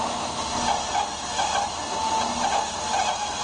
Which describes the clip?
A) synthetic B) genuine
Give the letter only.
B